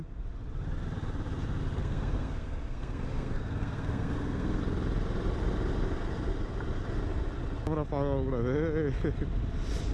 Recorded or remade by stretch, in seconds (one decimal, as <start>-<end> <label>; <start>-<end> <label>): 0.0-1.8 recorded; 1.8-4.6 remade; 4.6-9.9 recorded